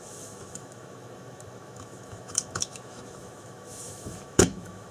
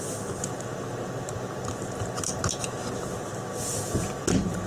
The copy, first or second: first